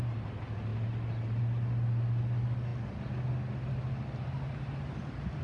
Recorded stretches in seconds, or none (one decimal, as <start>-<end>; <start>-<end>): 0.0-5.4